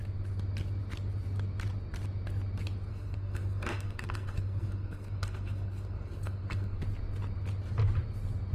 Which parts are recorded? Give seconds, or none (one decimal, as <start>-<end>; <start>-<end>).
0.0-2.9; 6.8-8.5

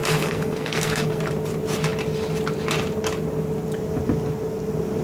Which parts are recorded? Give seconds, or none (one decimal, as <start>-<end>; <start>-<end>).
1.2-5.0

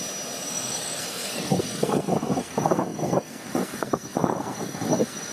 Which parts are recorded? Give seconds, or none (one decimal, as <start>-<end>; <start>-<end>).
0.0-0.5

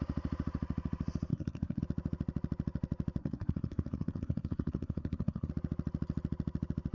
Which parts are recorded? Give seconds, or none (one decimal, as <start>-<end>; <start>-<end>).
0.0-1.3; 1.8-3.2; 5.5-6.9